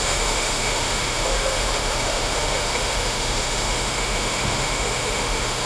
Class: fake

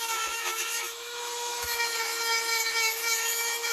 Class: fake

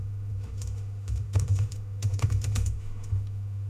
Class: fake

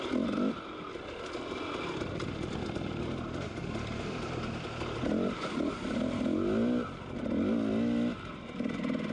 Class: real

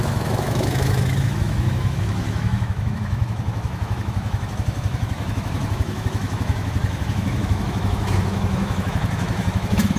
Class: fake